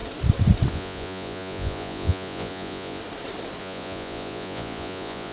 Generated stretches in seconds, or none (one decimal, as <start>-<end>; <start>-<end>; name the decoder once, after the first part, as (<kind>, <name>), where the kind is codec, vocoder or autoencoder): 0.7-3.0 (vocoder, Vocos); 3.6-5.3